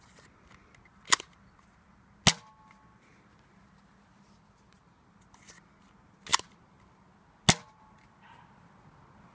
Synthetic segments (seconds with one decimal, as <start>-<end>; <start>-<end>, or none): none